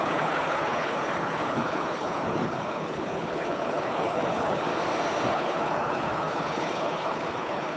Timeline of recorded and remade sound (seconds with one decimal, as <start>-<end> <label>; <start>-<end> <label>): 0.0-4.7 remade; 4.7-5.3 recorded; 5.3-7.8 remade